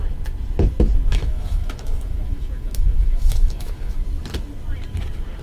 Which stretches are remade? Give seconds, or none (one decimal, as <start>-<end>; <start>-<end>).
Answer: 1.1-4.0